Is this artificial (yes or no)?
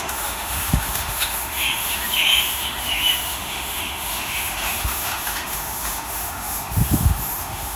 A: yes